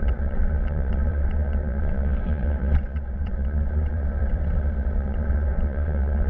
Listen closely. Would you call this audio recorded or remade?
remade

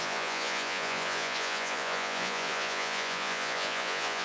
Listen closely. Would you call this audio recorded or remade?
remade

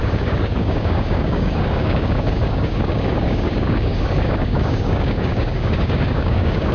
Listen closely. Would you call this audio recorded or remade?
remade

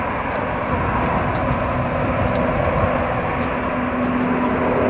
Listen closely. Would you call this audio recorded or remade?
recorded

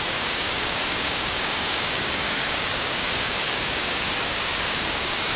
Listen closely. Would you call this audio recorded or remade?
remade